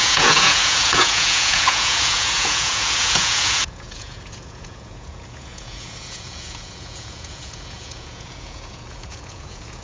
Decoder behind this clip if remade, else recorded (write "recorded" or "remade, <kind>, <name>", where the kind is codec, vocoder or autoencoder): remade, vocoder, Vocos